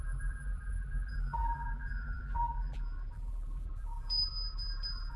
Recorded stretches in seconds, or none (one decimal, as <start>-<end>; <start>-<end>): none